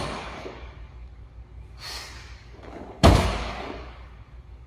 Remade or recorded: remade